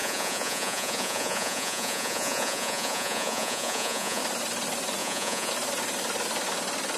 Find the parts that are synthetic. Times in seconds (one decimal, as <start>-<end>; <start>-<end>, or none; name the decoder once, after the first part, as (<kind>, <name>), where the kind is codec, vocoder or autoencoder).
0.0-4.2 (vocoder, Vocos); 5.0-5.5